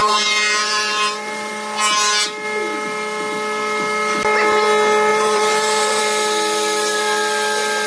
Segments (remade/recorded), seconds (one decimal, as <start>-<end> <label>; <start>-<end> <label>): 0.0-1.5 remade; 1.5-5.1 recorded; 5.1-6.0 remade; 6.0-7.9 recorded